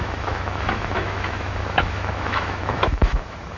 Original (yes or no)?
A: no